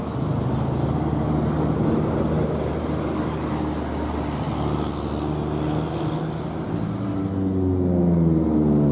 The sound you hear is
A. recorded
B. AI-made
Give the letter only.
A